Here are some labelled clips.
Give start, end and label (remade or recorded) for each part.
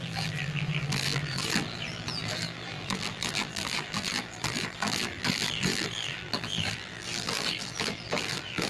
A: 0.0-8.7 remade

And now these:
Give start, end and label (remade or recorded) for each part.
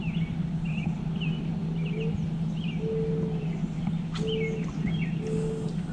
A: 0.0-5.9 recorded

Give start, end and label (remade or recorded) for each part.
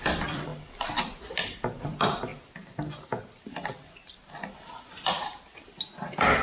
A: 0.0-2.3 remade; 2.3-4.5 recorded; 4.5-6.4 remade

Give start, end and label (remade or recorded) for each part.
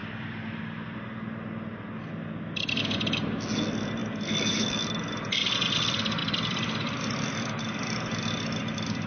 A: 0.0-0.6 remade; 0.6-4.0 recorded; 4.0-4.7 remade; 4.7-6.2 recorded; 6.2-7.6 remade; 7.6-9.1 recorded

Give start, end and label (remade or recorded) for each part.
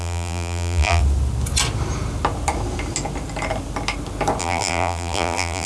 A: 0.0-1.0 remade; 1.0-4.4 recorded; 4.4-5.7 remade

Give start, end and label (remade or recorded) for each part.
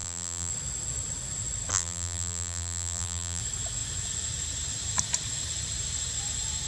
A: 0.0-0.5 remade; 0.5-1.7 recorded; 1.7-3.4 remade; 3.4-6.7 recorded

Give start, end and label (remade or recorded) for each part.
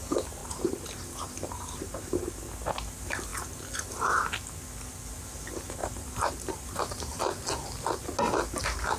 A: 0.0-0.4 recorded; 0.4-2.3 remade; 2.3-5.8 recorded; 5.8-7.2 remade; 7.2-9.0 recorded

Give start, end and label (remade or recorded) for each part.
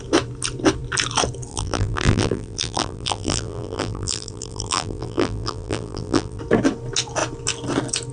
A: 0.0-1.5 recorded; 1.5-6.4 remade; 6.4-8.1 recorded